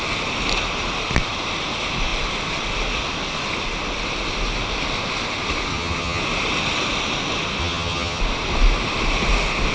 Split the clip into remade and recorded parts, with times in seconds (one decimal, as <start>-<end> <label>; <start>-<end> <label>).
0.0-5.7 recorded; 5.7-6.2 remade; 6.2-7.6 recorded; 7.6-8.2 remade; 8.2-9.7 recorded